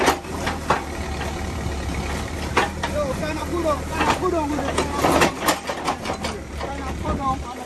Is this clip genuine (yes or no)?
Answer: no